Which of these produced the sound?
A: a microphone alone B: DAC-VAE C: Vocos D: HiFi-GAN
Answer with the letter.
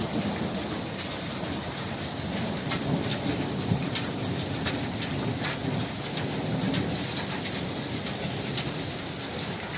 A